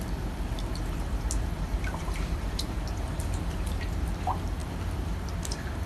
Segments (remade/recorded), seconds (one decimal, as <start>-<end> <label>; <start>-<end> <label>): 0.0-1.7 recorded; 1.7-3.8 remade; 3.8-5.9 recorded